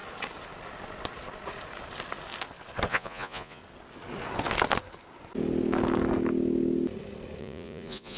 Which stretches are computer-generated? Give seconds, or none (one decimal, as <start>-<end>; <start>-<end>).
2.9-3.6; 7.4-8.2